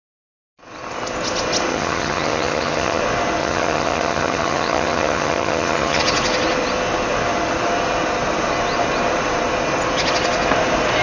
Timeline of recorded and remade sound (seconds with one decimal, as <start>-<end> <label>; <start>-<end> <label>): 0.0-1.7 recorded; 1.7-3.0 remade; 3.0-3.4 recorded; 3.4-6.0 remade; 6.0-11.0 recorded